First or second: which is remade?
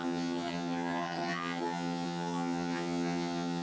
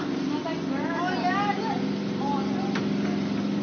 first